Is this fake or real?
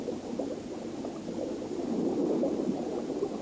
real